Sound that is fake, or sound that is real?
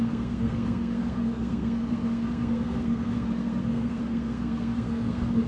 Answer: fake